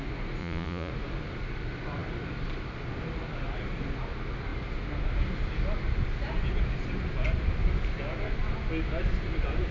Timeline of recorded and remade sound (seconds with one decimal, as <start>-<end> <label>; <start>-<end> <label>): 0.0-0.4 recorded; 0.4-0.9 remade; 0.9-9.7 recorded